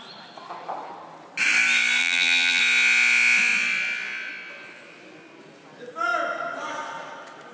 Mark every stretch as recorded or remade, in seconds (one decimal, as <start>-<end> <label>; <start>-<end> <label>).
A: 0.0-2.0 recorded; 2.0-2.6 remade; 2.6-7.5 recorded